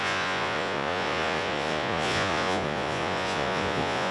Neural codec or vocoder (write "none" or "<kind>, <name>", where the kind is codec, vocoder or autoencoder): vocoder, Vocos